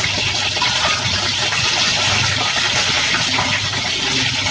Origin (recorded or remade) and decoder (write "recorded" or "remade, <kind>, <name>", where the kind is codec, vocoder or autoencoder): recorded